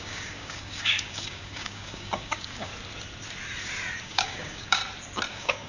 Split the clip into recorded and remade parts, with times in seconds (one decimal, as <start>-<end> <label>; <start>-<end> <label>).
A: 0.0-2.7 remade; 2.7-4.0 recorded; 4.0-4.8 remade; 4.8-5.3 recorded; 5.3-5.7 remade

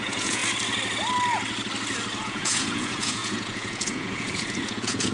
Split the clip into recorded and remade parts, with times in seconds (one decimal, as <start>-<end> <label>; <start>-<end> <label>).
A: 0.0-0.4 remade; 0.4-2.2 recorded; 2.2-5.1 remade